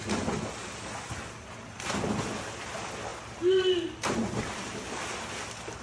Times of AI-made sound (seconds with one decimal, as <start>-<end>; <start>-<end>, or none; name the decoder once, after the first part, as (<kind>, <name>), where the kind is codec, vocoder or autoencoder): none